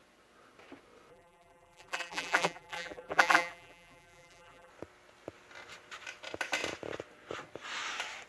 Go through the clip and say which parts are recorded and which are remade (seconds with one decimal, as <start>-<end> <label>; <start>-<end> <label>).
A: 0.0-1.1 recorded; 1.1-4.7 remade; 4.7-8.3 recorded